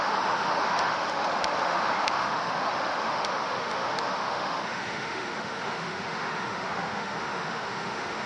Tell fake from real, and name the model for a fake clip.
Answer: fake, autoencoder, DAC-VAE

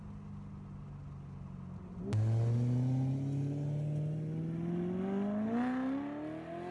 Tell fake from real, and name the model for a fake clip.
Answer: real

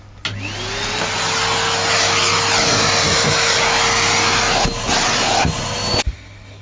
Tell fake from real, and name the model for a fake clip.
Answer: real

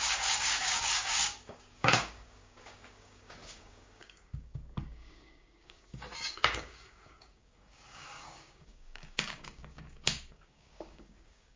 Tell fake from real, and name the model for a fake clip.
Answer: fake, codec, DAC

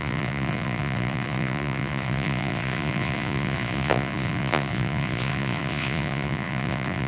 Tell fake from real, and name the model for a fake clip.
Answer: fake, vocoder, Vocos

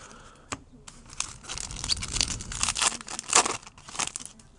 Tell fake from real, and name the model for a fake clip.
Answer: real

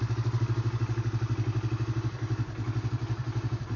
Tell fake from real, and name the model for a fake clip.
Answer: real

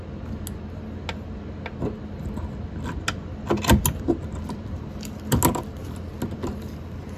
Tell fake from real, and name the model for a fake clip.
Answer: real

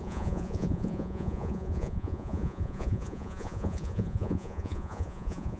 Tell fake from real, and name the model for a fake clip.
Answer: fake, vocoder, Vocos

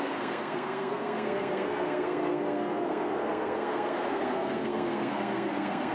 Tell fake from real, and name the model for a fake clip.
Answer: fake, codec, SNAC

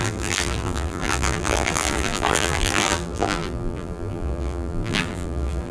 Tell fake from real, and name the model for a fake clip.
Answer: fake, vocoder, BigVGAN v2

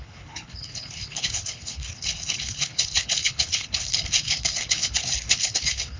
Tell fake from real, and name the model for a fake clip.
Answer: fake, codec, HILCodec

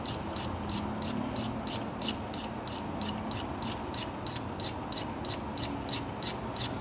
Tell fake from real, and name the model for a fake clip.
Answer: real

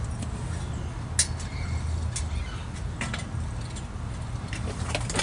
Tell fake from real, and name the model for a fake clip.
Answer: real